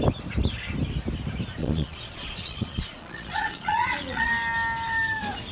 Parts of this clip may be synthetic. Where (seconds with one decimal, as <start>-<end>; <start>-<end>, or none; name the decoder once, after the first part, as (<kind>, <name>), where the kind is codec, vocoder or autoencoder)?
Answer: 1.6-4.3 (vocoder, Vocos)